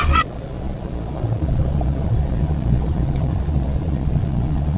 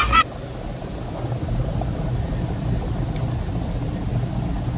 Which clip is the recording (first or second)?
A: second